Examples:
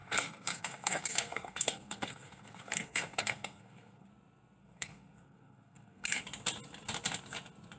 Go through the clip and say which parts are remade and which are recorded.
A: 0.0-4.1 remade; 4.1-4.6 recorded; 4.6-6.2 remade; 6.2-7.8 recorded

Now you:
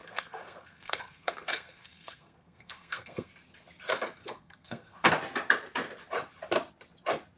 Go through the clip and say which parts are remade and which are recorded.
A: 0.0-3.3 remade; 3.3-4.2 recorded; 4.2-5.1 remade; 5.1-7.4 recorded

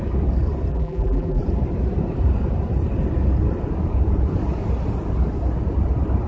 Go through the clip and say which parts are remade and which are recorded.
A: 0.0-0.7 recorded; 0.7-1.4 remade; 1.4-6.3 recorded